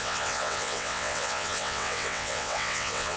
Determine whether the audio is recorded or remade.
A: remade